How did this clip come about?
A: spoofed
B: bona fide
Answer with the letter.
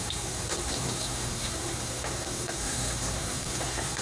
A